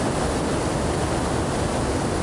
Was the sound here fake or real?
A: real